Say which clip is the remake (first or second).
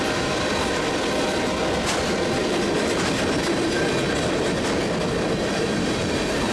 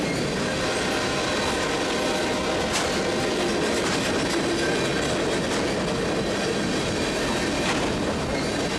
first